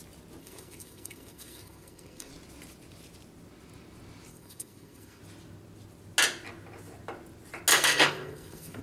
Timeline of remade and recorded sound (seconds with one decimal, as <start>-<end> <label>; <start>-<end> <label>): 0.0-0.4 recorded; 0.4-2.3 remade; 2.3-4.3 recorded; 4.3-5.2 remade; 5.2-7.7 recorded; 7.7-8.8 remade